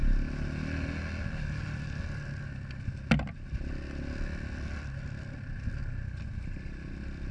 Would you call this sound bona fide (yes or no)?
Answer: yes